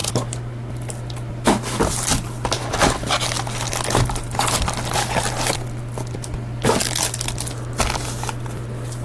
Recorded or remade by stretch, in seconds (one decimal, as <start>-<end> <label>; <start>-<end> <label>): 0.0-9.0 recorded